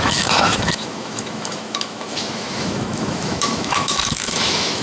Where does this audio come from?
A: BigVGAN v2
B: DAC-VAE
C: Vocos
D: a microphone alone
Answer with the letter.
B